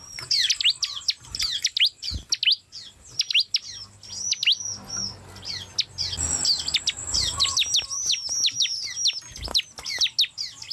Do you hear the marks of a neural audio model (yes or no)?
no